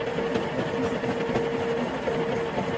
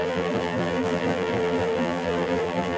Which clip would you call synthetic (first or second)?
second